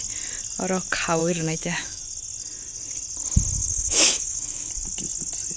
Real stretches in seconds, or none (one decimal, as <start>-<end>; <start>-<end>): 0.0-1.2; 2.0-3.6; 4.7-5.6